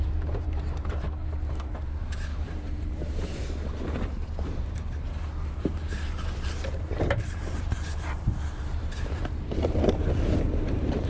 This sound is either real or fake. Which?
fake